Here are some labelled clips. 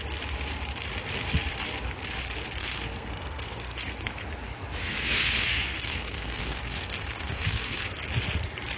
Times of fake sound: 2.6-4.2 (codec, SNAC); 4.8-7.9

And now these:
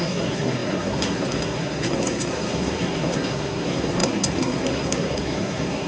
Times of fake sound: 0.0-5.9 (codec, SNAC)

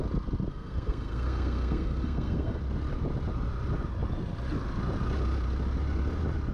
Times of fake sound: 0.5-2.6 (codec, SNAC)

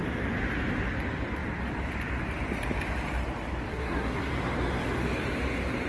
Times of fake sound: 3.7-4.3 (codec, SNAC)